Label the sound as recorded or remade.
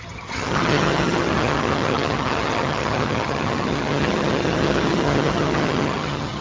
remade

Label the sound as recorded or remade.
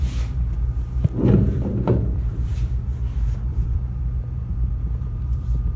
remade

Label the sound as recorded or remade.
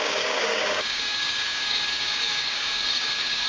remade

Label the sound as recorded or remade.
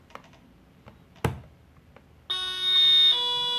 recorded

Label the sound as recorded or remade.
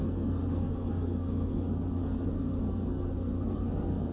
remade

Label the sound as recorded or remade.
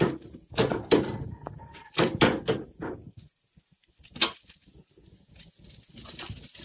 recorded